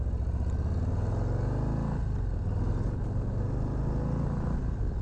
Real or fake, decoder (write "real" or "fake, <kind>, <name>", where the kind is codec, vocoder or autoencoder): real